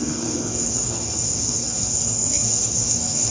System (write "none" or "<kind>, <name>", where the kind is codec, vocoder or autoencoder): codec, SNAC